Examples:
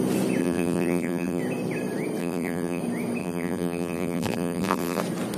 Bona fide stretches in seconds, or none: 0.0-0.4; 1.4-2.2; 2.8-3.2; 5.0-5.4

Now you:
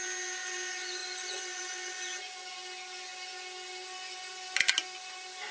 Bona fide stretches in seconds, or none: 0.0-1.0; 1.6-5.5

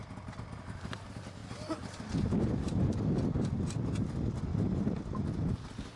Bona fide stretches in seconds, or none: 0.5-1.4; 3.0-4.5; 5.0-6.0